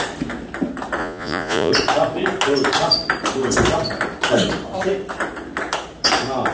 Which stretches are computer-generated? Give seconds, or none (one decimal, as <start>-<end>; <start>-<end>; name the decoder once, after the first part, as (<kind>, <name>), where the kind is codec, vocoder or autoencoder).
1.0-1.7 (vocoder, Vocos)